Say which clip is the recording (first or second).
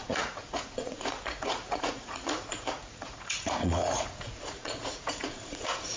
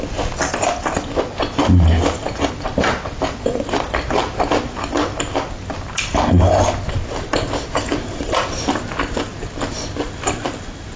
second